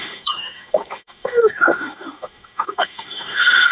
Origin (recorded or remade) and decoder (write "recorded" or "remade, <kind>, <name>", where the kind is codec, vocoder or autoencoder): remade, autoencoder, DAC-VAE